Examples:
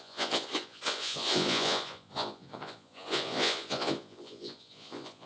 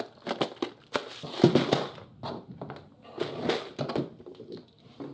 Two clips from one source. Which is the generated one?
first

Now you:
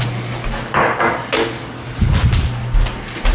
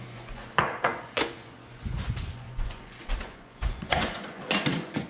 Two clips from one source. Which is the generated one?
second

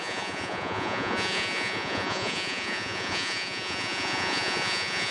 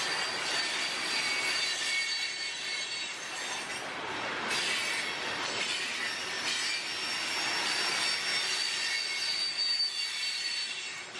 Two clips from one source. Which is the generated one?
first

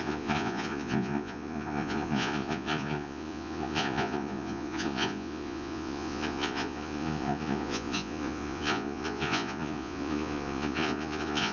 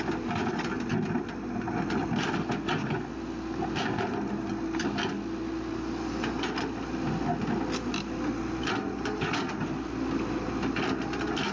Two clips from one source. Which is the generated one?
first